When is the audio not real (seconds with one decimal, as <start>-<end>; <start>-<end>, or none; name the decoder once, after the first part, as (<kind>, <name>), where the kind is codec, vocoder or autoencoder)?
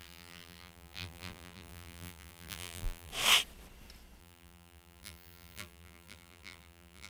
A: 0.0-3.1 (vocoder, BigVGAN v2); 4.2-7.1